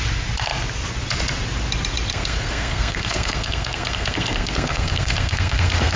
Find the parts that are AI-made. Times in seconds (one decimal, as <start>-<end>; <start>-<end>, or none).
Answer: 2.1-6.0